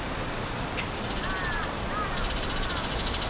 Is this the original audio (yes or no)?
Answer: yes